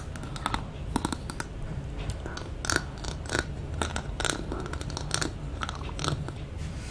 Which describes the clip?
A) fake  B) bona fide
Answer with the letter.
B